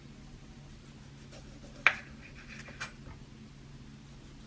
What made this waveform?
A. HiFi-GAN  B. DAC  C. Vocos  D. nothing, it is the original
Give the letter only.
D